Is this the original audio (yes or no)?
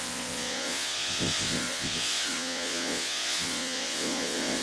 no